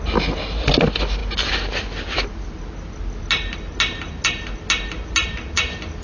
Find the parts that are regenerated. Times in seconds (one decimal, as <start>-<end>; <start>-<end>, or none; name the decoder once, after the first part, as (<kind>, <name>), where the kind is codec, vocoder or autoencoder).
none